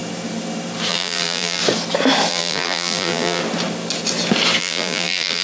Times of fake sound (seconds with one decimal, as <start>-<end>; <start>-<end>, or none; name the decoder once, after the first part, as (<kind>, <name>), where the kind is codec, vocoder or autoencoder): 0.9-1.6 (vocoder, BigVGAN v2); 2.3-3.4; 4.6-5.4